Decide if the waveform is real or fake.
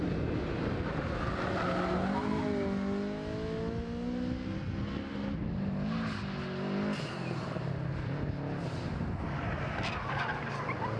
real